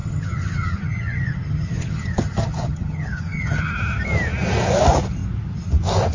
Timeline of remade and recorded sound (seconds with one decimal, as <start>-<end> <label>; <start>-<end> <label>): 0.0-3.7 remade; 3.7-6.1 recorded